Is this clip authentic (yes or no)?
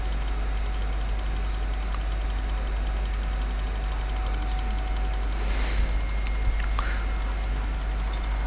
yes